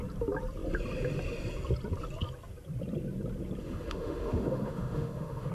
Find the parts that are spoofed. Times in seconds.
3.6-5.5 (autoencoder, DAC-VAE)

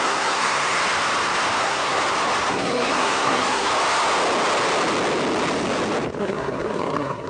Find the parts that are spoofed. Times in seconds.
0.0-0.8 (codec, SNAC); 1.6-2.0; 2.5-3.7; 6.2-7.3

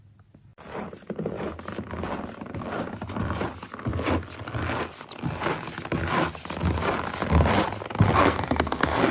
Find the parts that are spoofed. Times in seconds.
8.2-9.1 (codec, SNAC)

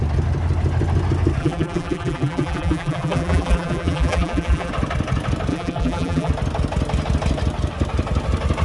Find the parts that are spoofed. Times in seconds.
1.4-4.7 (vocoder, BigVGAN v2); 5.5-6.3

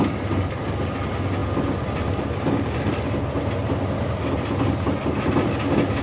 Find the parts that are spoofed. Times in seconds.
none

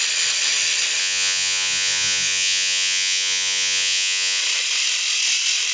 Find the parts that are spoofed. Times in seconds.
1.0-4.4 (vocoder, Vocos)

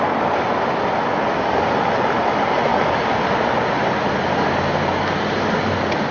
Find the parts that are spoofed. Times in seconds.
none